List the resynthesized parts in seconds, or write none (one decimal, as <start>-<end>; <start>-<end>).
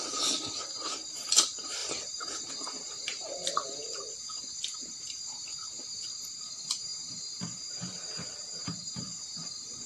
0.0-5.4; 6.3-9.9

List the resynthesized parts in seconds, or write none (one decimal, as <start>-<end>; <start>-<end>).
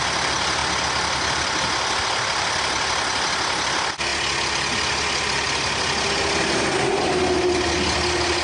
none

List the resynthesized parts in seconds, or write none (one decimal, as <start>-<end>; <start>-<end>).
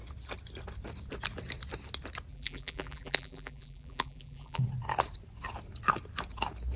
2.3-4.6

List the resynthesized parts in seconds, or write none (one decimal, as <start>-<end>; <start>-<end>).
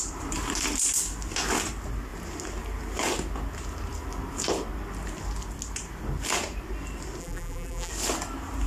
7.2-7.9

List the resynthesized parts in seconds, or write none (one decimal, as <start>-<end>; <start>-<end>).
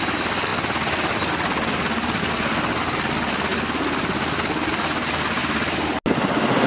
none